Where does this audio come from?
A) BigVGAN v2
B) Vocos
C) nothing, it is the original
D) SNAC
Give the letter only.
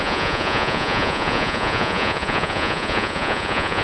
B